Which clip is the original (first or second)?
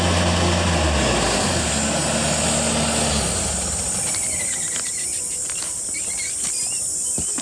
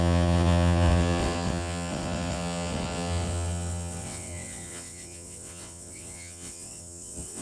first